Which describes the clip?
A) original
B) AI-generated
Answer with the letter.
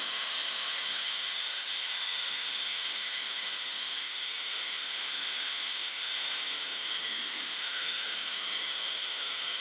B